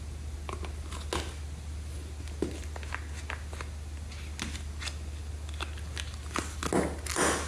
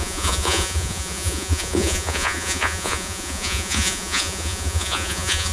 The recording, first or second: first